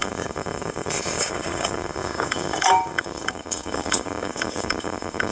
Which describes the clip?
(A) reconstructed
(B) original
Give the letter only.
A